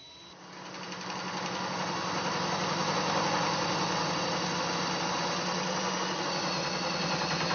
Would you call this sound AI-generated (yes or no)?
no